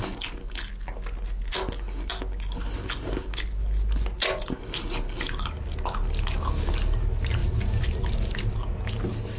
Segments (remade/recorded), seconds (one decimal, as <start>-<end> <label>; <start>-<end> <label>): 0.0-7.4 recorded; 7.4-8.4 remade; 8.4-9.4 recorded